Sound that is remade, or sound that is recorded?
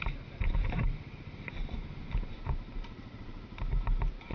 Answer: remade